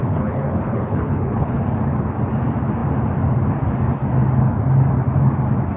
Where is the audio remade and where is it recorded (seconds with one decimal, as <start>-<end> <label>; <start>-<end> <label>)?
0.0-1.6 remade; 1.6-5.8 recorded